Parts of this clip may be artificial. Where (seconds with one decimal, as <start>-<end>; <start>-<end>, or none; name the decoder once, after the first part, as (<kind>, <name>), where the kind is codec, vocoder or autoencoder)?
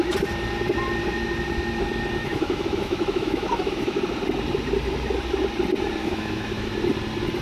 2.2-4.0 (autoencoder, DAC-VAE); 6.0-6.7